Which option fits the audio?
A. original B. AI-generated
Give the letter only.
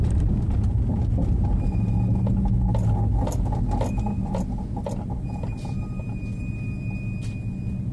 A